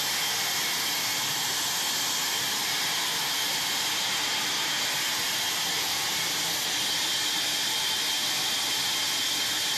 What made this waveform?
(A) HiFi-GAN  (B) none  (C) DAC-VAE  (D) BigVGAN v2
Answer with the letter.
B